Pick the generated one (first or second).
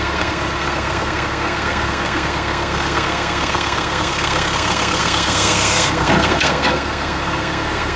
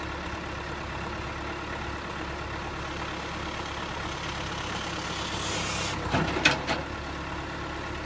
first